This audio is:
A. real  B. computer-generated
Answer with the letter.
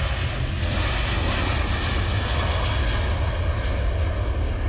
A